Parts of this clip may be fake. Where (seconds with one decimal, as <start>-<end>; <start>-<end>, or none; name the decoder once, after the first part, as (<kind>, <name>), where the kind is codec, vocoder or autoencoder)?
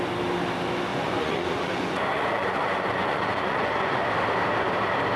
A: 0.9-4.0 (vocoder, Vocos)